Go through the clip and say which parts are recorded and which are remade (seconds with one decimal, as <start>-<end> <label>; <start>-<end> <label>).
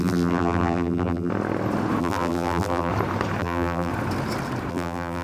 0.0-1.3 remade; 1.3-2.0 recorded; 2.0-2.9 remade; 2.9-3.4 recorded; 3.4-3.9 remade; 3.9-4.7 recorded; 4.7-5.2 remade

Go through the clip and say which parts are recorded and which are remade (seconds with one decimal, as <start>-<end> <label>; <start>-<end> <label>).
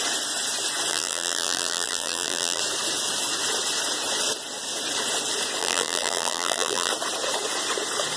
0.0-0.9 recorded; 0.9-2.6 remade; 2.6-5.6 recorded; 5.6-6.9 remade; 6.9-8.2 recorded